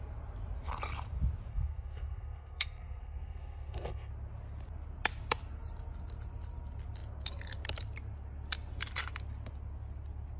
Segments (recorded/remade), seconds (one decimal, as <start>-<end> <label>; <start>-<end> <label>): 0.0-1.5 recorded; 1.5-4.1 remade; 4.1-10.4 recorded